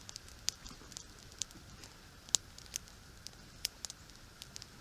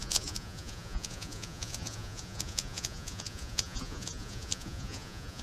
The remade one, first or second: second